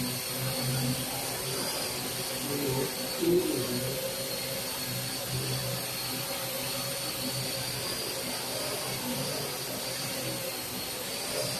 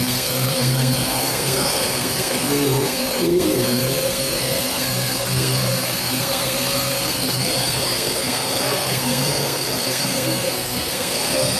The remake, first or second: second